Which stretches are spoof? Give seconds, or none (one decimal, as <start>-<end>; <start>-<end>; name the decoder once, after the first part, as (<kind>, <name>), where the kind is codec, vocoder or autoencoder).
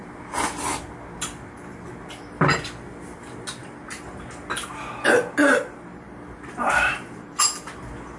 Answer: 3.6-4.5 (vocoder, BigVGAN v2); 5.9-7.4